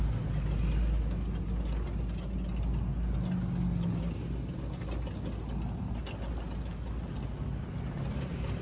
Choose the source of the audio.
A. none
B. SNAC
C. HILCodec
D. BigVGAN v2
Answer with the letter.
A